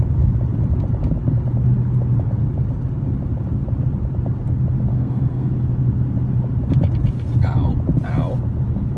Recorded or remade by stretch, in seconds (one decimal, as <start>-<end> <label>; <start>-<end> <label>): 0.0-4.9 recorded; 4.9-5.5 remade; 5.5-9.0 recorded